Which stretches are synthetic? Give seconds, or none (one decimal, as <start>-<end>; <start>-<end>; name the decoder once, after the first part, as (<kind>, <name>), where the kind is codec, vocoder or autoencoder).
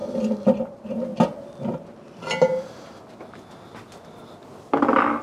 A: none